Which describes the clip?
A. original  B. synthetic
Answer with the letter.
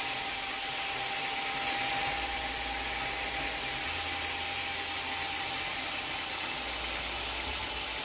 A